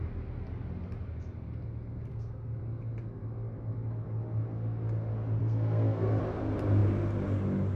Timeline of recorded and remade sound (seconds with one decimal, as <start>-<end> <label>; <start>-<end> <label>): 0.0-2.1 recorded; 2.1-2.6 remade; 2.6-5.4 recorded; 5.4-6.2 remade; 6.2-7.8 recorded